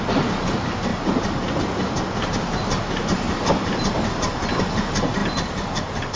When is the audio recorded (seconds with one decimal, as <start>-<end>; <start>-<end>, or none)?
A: none